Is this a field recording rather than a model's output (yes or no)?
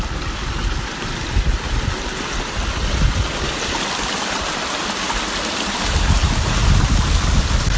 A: yes